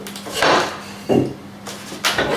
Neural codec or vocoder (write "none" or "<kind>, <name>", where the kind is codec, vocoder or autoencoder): none